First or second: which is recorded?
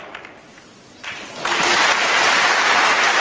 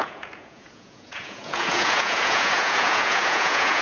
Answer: first